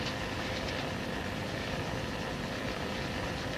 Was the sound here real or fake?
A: real